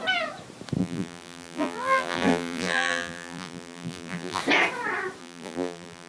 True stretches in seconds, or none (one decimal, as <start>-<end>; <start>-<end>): 0.0-0.8; 4.4-5.2